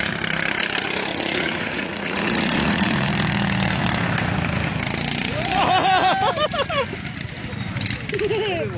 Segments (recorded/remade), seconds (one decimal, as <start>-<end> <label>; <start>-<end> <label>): 0.0-1.1 recorded; 1.1-3.1 remade; 3.1-8.8 recorded

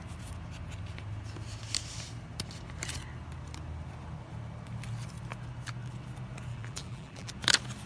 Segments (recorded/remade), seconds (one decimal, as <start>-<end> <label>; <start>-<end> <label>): 0.0-6.5 recorded; 6.5-7.3 remade; 7.3-7.9 recorded

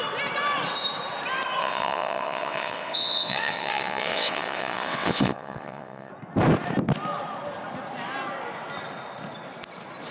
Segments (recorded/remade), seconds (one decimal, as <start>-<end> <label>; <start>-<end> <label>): 0.0-1.6 recorded; 1.6-6.1 remade; 6.1-10.1 recorded